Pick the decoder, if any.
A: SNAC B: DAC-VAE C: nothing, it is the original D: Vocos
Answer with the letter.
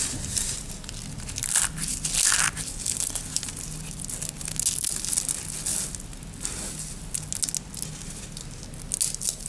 C